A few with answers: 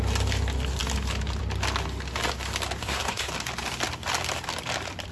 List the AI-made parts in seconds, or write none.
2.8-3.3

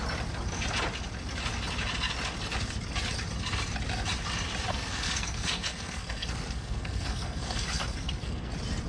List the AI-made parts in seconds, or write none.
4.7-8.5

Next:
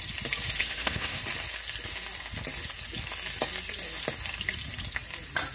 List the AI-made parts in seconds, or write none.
0.6-1.2

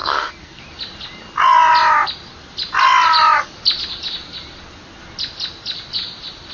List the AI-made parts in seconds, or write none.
0.0-0.6

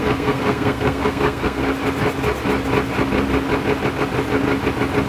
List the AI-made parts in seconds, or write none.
0.0-1.6

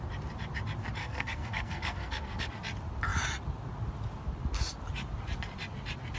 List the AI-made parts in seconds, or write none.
1.0-2.5

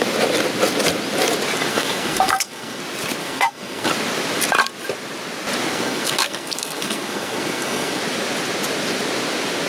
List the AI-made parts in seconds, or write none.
1.7-2.8; 3.2-3.9; 5.7-8.0

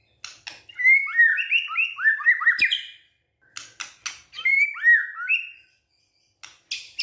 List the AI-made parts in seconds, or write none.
none